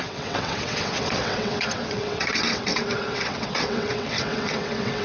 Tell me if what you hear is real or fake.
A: fake